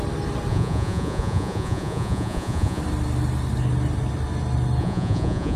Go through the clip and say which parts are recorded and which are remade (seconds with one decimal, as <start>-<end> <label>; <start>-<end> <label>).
0.0-0.5 recorded; 0.5-2.8 remade; 2.8-4.8 recorded; 4.8-5.6 remade